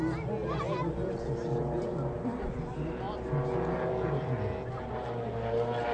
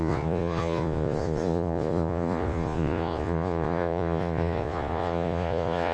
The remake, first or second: second